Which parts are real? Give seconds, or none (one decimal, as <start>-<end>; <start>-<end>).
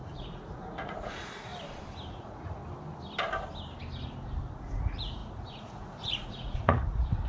1.5-2.1; 2.6-4.8